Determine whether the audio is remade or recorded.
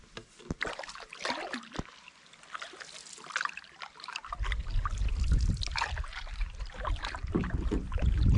recorded